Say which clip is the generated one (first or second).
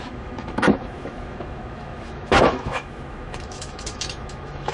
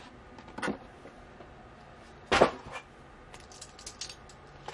first